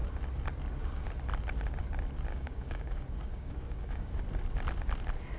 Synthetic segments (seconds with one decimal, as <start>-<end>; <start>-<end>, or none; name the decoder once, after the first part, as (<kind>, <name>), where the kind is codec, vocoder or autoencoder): 2.3-4.2 (codec, DAC)

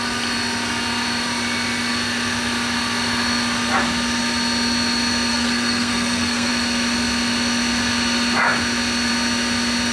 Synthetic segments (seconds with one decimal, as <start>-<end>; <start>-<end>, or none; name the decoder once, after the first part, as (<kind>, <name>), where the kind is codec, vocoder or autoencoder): 5.3-6.5 (codec, SNAC)

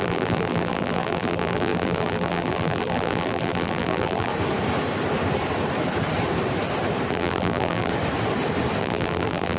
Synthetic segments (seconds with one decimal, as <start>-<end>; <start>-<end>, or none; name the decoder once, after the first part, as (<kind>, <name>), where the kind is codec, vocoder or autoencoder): 0.0-4.3 (vocoder, BigVGAN v2); 7.1-7.9; 8.8-9.6

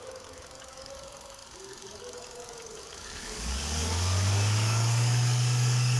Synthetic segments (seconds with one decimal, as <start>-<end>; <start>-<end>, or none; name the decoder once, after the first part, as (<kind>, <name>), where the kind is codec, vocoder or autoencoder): 0.0-6.0 (codec, DAC)

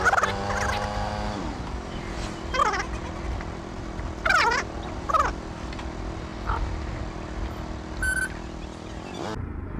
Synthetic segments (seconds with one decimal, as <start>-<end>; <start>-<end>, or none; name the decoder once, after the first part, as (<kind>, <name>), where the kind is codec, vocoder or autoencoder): 3.0-5.3 (vocoder, BigVGAN v2); 6.3-7.0

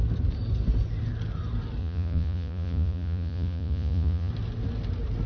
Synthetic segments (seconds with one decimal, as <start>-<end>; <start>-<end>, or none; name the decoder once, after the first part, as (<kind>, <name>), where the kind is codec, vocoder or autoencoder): 1.8-4.3 (vocoder, Vocos)